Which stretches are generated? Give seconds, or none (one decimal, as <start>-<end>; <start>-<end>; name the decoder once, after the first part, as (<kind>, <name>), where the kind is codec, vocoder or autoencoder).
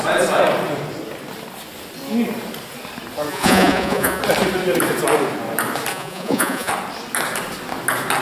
3.3-4.2 (vocoder, Vocos); 5.9-6.7